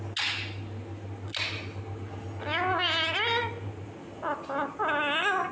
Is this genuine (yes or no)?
yes